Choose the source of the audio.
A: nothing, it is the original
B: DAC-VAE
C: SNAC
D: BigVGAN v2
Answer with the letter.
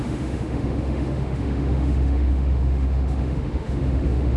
B